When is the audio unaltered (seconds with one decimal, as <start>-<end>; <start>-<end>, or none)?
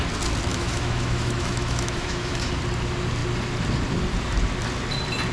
0.0-0.5; 2.5-5.3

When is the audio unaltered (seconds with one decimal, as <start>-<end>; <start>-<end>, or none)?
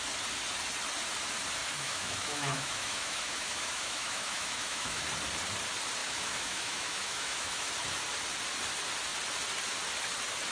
0.0-1.6; 5.0-6.0; 7.7-10.5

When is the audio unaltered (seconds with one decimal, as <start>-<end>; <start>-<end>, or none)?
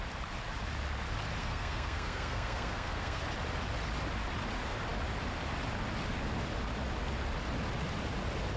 0.0-1.4; 3.2-8.6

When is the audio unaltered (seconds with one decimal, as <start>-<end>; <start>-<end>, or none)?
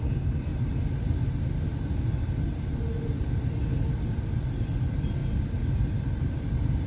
0.0-6.9